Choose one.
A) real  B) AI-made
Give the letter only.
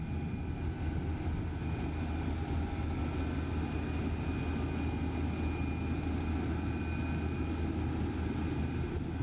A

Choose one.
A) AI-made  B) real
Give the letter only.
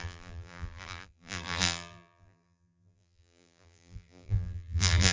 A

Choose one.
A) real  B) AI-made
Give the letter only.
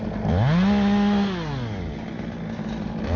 A